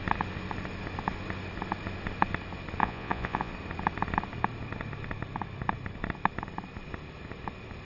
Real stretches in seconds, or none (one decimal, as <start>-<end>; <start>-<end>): 0.0-2.8; 3.5-7.8